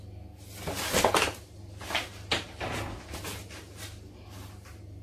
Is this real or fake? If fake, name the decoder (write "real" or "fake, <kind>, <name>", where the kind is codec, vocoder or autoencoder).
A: real